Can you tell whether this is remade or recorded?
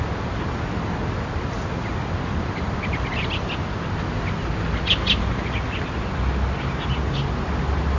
recorded